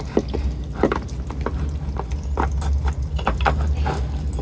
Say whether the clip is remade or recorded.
recorded